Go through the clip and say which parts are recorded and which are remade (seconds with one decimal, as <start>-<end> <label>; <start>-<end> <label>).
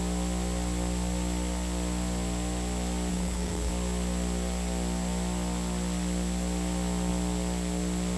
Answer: 0.0-3.1 recorded; 3.1-3.7 remade; 3.7-8.2 recorded